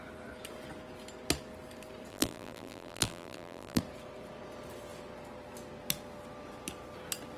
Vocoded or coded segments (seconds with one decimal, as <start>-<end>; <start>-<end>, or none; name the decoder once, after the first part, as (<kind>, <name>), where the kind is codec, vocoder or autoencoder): 2.1-3.8 (vocoder, BigVGAN v2)